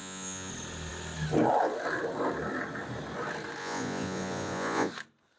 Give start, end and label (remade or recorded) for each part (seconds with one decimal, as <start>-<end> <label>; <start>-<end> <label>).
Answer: 0.0-0.5 remade; 0.5-3.6 recorded; 3.6-4.9 remade; 4.9-5.4 recorded